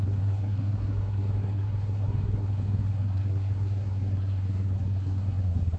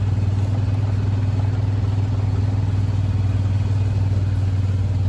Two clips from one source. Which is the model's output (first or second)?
first